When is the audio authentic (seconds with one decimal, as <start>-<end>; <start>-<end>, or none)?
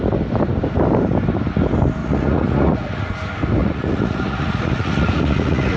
0.0-2.0; 3.1-3.6